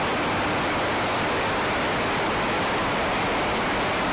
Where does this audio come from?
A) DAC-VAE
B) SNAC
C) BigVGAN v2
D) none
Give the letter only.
D